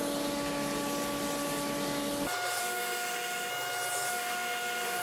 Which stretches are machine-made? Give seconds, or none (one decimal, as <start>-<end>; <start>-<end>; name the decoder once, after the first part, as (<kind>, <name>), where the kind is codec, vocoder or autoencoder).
2.6-3.5 (autoencoder, DAC-VAE); 4.1-5.0